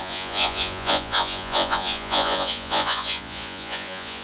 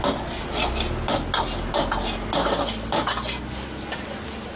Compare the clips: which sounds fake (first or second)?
first